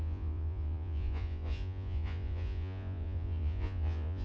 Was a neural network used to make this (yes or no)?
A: yes